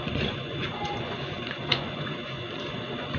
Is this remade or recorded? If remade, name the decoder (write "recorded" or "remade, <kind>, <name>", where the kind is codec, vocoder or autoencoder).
remade, vocoder, Vocos